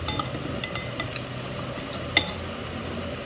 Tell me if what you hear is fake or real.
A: real